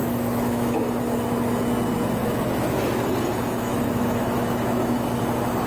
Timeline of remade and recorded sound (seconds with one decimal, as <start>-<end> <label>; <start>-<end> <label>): 0.0-1.0 remade; 1.0-2.2 recorded; 2.2-5.7 remade